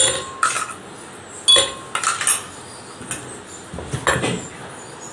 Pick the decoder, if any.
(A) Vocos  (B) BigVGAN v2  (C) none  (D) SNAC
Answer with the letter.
C